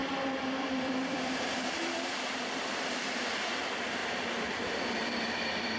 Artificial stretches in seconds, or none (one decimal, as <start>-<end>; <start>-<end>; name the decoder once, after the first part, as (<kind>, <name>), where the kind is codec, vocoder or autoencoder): 0.0-3.5 (vocoder, BigVGAN v2); 4.0-5.8